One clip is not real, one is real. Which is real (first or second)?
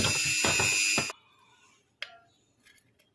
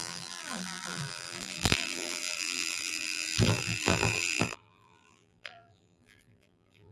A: first